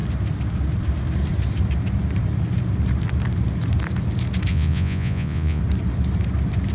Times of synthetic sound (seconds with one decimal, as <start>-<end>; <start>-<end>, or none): 4.5-5.6